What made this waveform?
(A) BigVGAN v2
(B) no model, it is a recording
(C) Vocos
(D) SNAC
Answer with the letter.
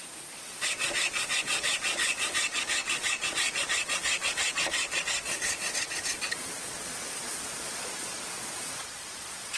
C